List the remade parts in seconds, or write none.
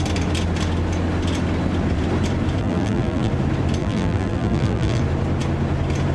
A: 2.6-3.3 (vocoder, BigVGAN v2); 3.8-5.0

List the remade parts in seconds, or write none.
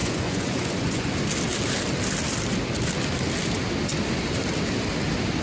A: 0.0-1.1 (vocoder, Vocos)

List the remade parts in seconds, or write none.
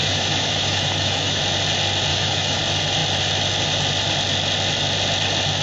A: 0.0-1.4 (autoencoder, DAC-VAE); 2.1-2.6